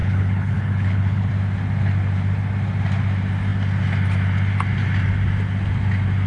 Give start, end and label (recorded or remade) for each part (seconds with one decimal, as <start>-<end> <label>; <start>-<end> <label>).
0.0-1.3 remade; 1.3-6.3 recorded